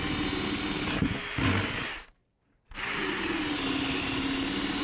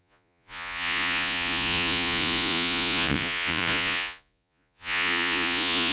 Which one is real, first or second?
first